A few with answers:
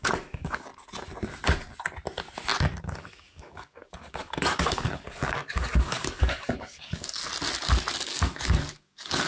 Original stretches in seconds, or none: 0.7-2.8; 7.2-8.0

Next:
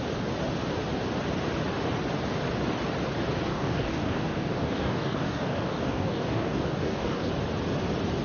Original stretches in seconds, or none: 0.0-3.5; 7.3-8.2